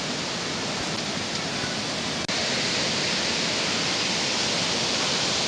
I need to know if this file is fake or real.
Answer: real